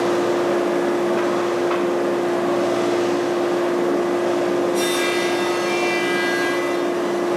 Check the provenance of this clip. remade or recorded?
recorded